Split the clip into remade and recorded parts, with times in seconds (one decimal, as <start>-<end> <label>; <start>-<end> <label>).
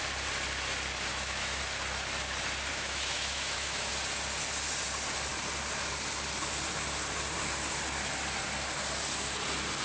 0.0-1.1 recorded; 1.1-1.6 remade; 1.6-2.7 recorded; 2.7-3.9 remade; 3.9-9.8 recorded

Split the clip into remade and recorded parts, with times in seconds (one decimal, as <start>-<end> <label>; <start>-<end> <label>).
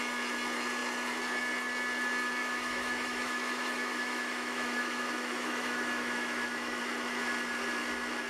0.0-2.4 recorded; 2.4-6.8 remade; 6.8-8.3 recorded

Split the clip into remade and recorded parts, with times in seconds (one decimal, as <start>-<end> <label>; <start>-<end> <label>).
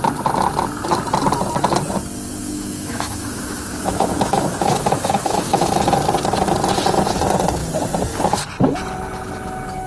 0.0-2.4 recorded; 2.4-5.7 remade; 5.7-9.9 recorded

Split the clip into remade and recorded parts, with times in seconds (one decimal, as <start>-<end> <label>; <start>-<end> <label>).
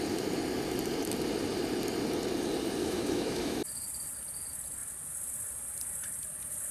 0.0-2.8 recorded; 2.8-3.6 remade; 3.6-6.7 recorded